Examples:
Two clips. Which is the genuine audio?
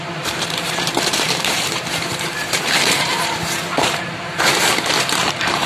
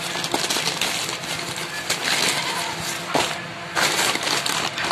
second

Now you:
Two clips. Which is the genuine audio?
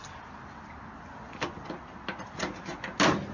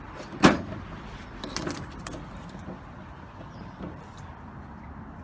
first